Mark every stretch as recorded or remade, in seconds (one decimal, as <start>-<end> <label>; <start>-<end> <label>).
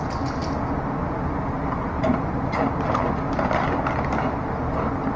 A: 0.0-5.2 recorded